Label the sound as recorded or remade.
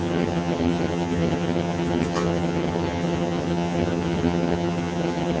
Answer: remade